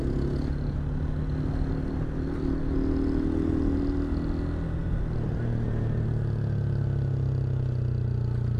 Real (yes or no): yes